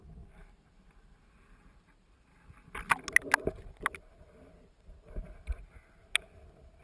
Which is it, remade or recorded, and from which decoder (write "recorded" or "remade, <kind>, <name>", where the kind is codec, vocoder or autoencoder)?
recorded